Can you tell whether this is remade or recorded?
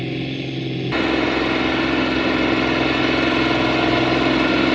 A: recorded